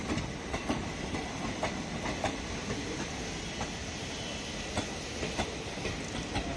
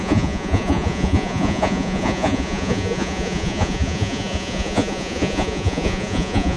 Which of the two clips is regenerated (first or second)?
second